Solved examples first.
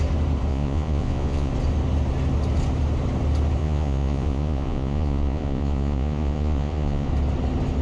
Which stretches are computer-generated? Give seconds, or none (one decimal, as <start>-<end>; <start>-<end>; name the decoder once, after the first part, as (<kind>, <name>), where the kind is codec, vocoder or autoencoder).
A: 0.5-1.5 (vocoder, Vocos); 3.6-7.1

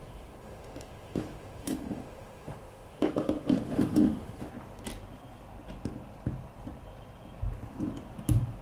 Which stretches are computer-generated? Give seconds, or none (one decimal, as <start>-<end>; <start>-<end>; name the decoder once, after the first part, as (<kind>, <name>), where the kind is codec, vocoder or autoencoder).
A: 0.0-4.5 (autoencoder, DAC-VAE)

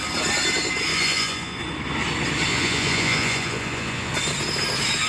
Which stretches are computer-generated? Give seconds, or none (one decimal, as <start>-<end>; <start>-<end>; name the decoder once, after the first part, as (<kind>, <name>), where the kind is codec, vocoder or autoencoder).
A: 0.9-1.6 (vocoder, Vocos); 2.5-4.1

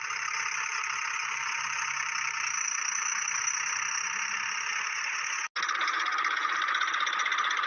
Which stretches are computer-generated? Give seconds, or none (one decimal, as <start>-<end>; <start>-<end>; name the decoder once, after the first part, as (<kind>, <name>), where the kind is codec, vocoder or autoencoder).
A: 4.7-5.5 (vocoder, Vocos)

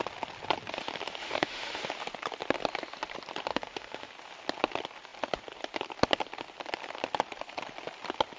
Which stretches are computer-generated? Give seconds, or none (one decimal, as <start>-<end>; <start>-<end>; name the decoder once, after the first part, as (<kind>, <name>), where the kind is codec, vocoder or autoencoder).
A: 1.2-1.8 (autoencoder, DAC-VAE); 3.5-4.1